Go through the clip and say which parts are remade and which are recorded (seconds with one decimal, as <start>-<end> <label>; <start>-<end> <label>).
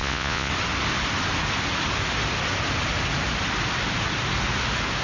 0.0-0.5 remade; 0.5-5.0 recorded